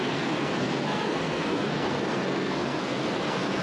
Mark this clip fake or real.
fake